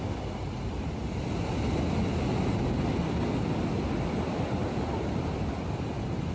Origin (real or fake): real